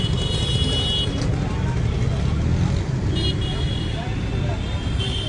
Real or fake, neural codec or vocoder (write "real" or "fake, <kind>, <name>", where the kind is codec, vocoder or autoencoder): real